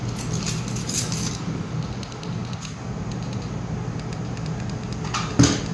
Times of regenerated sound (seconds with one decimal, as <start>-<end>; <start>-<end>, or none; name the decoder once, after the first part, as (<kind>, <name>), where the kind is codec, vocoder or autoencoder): 0.8-1.7 (codec, DAC)